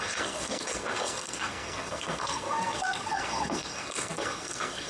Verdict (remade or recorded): remade